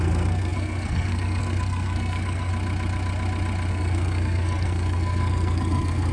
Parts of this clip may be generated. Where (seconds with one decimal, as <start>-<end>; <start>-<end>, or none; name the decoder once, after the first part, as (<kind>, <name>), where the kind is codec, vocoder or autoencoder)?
0.0-2.5 (codec, SNAC); 3.7-6.1